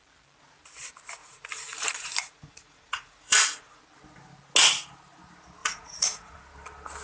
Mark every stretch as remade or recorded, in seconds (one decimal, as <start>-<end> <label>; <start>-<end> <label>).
0.0-1.2 recorded; 1.2-3.8 remade; 3.8-5.6 recorded; 5.6-6.4 remade; 6.4-7.0 recorded